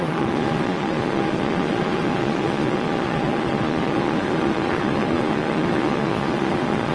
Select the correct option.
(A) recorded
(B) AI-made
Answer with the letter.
B